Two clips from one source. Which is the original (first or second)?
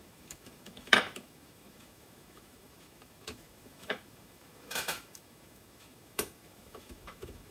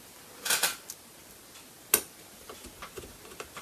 second